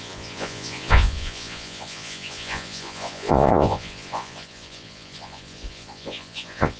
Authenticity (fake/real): fake